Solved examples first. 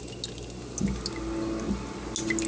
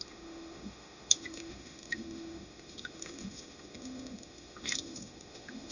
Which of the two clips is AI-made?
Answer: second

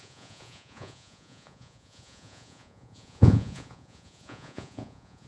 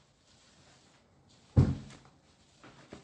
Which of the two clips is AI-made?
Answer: first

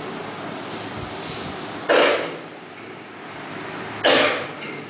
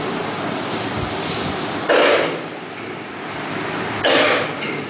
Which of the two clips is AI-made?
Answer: second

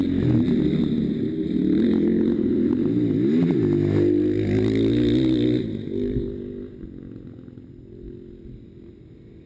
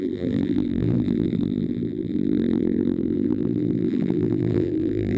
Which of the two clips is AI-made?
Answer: second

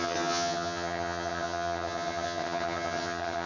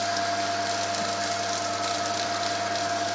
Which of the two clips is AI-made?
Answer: first